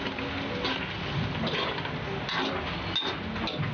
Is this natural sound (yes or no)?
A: yes